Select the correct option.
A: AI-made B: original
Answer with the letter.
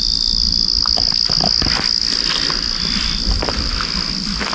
B